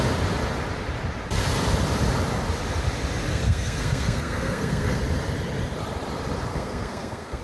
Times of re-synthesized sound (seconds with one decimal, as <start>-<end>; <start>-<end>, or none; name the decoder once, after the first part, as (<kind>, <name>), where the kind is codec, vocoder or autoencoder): 3.3-5.0 (codec, SNAC); 6.5-7.4